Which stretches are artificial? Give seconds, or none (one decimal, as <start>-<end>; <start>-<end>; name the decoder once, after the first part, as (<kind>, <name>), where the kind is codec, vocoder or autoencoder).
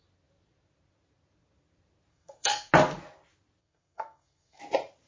2.1-2.7 (codec, SNAC); 3.6-4.6